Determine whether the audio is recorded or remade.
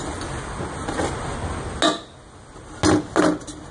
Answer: recorded